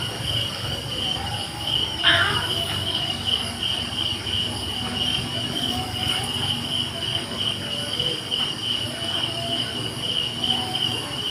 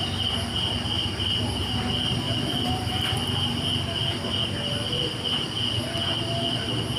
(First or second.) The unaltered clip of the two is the second